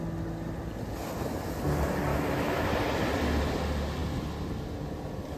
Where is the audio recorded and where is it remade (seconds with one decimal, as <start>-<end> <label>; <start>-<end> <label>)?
0.0-2.1 recorded; 2.1-2.7 remade; 2.7-5.4 recorded